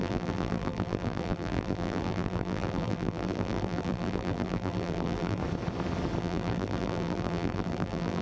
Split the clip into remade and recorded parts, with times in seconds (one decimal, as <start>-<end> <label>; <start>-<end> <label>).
0.0-5.4 remade; 5.4-6.2 recorded; 6.2-8.2 remade